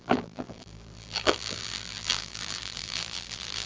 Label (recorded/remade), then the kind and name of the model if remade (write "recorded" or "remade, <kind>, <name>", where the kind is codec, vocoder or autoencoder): remade, vocoder, BigVGAN v2